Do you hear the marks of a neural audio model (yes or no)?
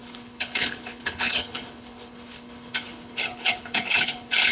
yes